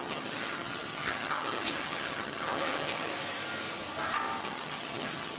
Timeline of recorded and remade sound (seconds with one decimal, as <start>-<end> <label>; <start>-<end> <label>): 0.0-3.1 remade; 3.1-4.4 recorded; 4.4-5.4 remade